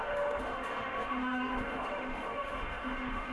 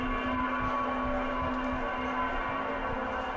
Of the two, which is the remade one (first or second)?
first